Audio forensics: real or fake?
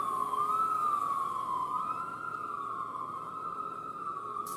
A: real